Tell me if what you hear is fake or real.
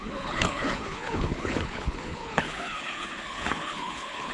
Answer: fake